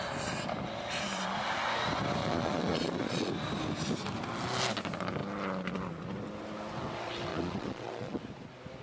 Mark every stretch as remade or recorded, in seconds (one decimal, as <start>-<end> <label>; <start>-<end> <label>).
0.0-2.2 recorded; 2.2-3.3 remade; 3.3-7.3 recorded; 7.3-8.2 remade; 8.2-8.8 recorded